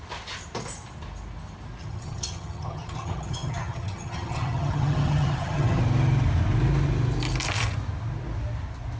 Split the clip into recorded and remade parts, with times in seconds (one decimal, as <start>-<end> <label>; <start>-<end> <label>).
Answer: 0.0-1.8 recorded; 1.8-5.8 remade; 5.8-9.0 recorded